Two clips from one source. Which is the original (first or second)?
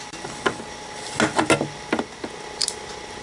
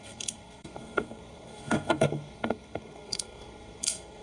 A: first